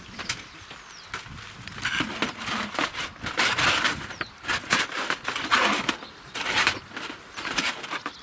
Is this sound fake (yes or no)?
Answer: no